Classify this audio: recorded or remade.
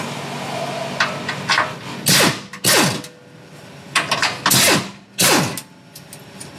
recorded